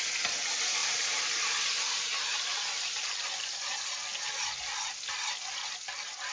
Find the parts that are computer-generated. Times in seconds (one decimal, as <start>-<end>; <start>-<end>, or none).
none

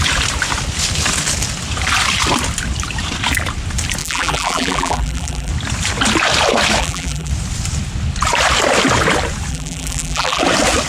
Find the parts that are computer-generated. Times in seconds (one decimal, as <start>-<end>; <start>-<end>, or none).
4.0-5.5; 6.8-7.3; 9.5-10.4

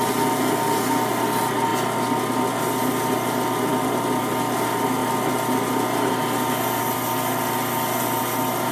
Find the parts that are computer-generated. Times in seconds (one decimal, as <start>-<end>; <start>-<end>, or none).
none